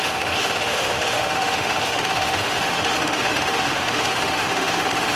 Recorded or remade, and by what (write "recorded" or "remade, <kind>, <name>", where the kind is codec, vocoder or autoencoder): remade, autoencoder, DAC-VAE